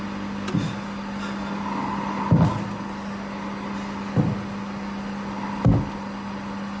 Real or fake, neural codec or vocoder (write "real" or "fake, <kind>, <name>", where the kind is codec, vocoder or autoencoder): real